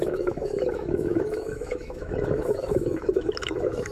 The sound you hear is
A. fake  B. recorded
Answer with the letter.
A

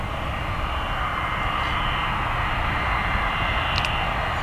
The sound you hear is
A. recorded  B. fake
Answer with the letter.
A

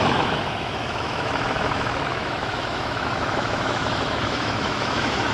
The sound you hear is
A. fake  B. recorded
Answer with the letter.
A